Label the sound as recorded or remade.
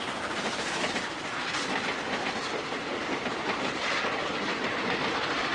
recorded